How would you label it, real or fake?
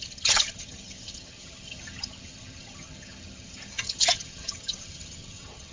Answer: fake